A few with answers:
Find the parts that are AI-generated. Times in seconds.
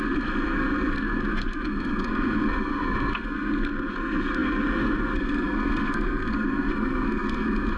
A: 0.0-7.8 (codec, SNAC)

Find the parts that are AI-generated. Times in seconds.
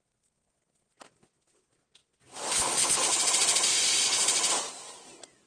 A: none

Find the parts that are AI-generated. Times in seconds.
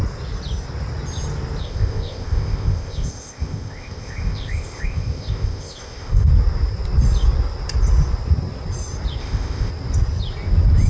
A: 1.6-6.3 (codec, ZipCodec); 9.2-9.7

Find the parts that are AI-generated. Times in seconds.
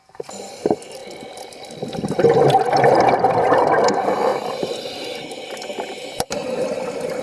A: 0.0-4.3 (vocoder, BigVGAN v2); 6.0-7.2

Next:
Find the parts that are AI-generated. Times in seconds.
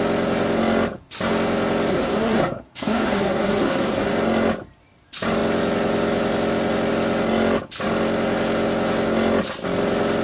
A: 1.9-4.1 (codec, SNAC)